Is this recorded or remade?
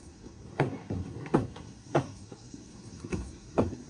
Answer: remade